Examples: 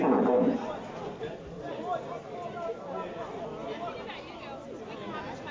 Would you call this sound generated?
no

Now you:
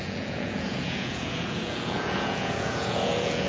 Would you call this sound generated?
yes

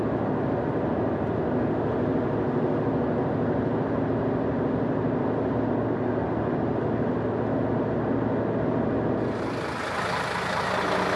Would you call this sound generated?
no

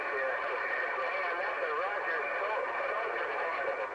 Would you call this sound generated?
no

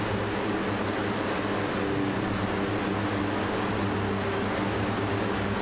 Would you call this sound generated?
no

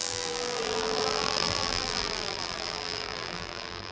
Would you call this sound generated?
yes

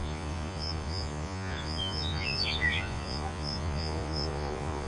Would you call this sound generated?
yes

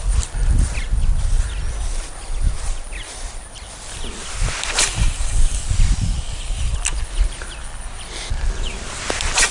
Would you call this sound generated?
no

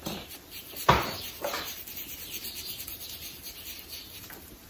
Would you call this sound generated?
no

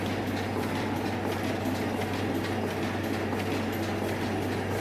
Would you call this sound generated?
no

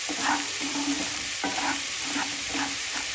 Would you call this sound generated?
yes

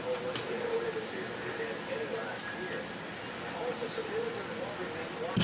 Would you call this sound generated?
no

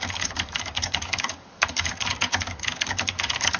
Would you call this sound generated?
yes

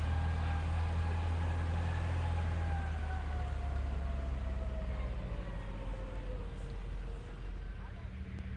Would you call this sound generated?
no